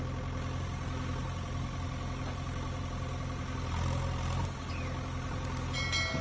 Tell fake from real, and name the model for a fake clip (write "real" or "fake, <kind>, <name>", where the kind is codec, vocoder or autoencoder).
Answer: real